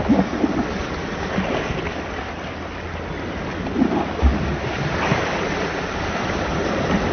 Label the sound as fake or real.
real